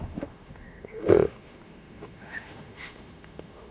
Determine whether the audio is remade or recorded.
remade